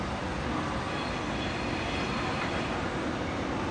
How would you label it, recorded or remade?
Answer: recorded